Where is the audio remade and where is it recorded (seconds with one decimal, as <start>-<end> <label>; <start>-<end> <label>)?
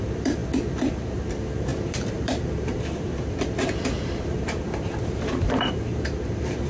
0.0-0.4 remade; 0.4-1.0 recorded; 1.0-6.7 remade